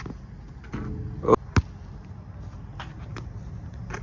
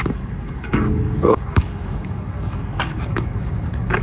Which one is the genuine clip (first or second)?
first